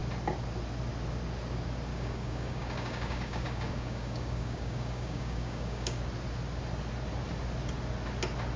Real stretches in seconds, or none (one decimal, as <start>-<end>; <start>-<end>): 0.0-1.9; 6.0-8.6